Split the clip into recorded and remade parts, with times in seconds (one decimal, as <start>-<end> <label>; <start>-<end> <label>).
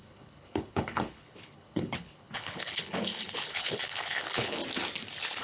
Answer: 0.0-4.6 remade; 4.6-5.4 recorded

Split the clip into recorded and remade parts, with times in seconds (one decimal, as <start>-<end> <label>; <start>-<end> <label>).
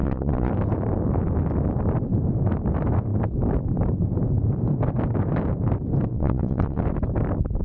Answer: 0.0-0.5 remade; 0.5-6.1 recorded; 6.1-6.8 remade; 6.8-7.6 recorded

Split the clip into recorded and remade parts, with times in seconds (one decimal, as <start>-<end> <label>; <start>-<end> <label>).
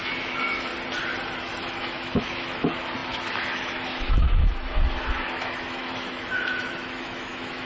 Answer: 0.0-0.7 remade; 0.7-1.4 recorded; 1.4-7.7 remade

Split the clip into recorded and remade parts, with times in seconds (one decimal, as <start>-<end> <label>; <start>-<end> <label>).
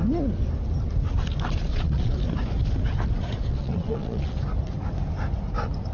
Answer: 0.0-1.7 recorded; 1.7-2.2 remade; 2.2-3.5 recorded; 3.5-4.3 remade; 4.3-5.9 recorded